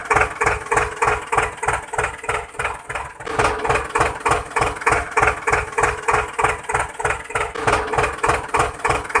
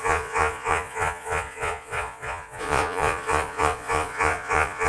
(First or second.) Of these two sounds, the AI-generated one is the second